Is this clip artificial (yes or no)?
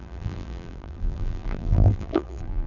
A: yes